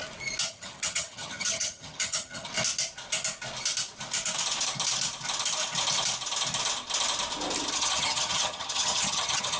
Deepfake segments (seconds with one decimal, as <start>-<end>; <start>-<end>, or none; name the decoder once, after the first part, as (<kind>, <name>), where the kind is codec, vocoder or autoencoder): 0.5-2.5 (vocoder, HiFi-GAN); 7.7-9.6